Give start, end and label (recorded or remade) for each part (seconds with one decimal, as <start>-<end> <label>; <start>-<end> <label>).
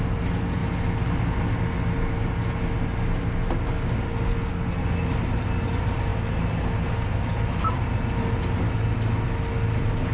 0.0-10.1 recorded